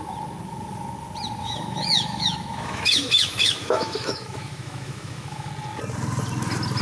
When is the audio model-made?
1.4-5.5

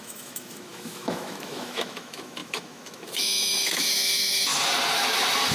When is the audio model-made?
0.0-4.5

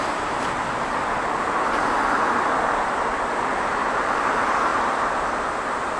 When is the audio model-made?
none

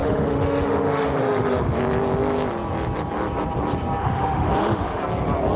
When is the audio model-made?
0.0-1.8; 4.0-5.0

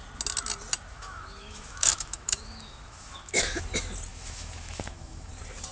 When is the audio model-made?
0.9-3.6; 4.1-5.3

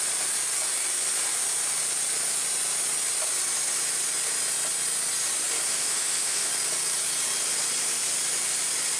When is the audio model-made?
5.7-6.5

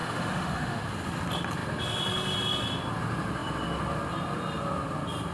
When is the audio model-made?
0.0-0.8

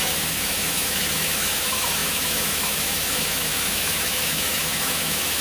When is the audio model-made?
0.0-5.4